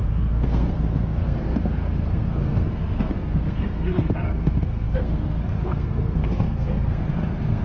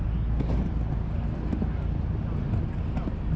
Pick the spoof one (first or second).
first